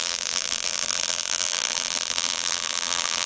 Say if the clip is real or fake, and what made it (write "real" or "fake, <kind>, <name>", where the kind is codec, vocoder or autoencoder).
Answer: fake, vocoder, BigVGAN v2